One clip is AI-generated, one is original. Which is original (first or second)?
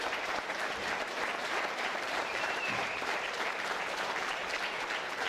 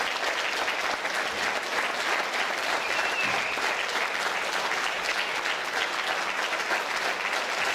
second